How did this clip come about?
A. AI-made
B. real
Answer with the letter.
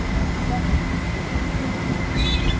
B